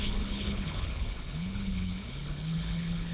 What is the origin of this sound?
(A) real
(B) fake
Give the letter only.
B